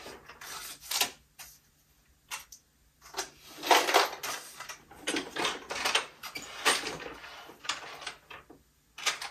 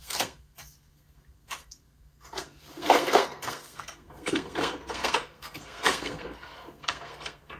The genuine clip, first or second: first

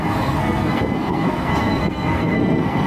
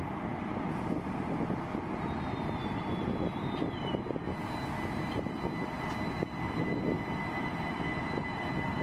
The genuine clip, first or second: second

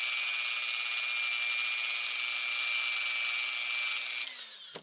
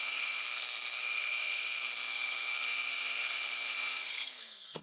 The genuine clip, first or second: first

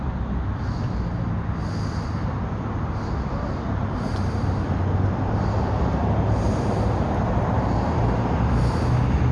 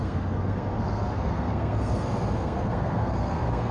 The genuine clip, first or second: first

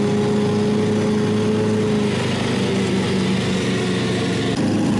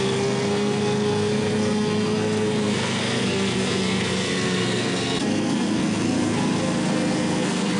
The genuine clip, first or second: first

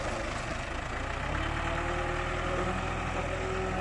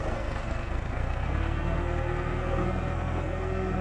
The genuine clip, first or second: first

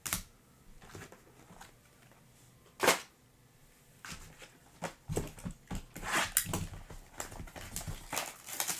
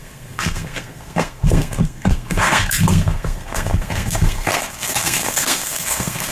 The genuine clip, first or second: first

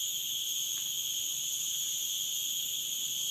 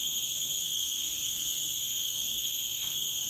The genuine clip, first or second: first